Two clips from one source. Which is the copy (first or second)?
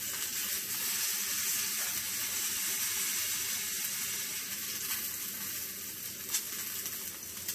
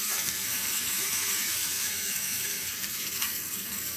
second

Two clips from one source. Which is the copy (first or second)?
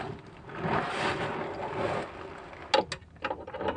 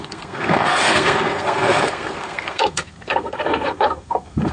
second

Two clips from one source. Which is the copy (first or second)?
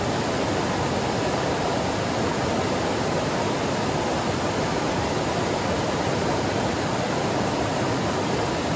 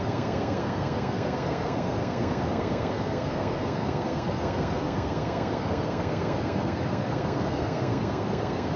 second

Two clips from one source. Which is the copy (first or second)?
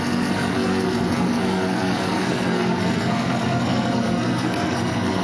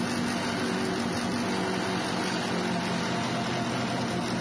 first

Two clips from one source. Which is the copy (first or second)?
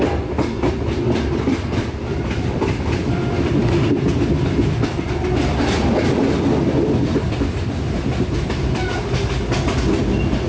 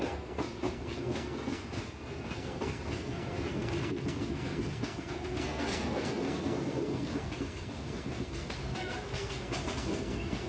second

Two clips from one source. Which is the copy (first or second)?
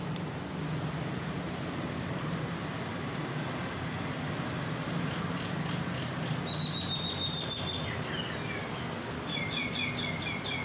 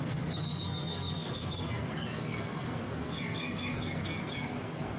second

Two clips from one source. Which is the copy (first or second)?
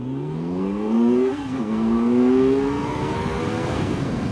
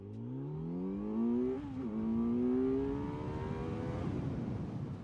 first